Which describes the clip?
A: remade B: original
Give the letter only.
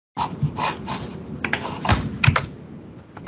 B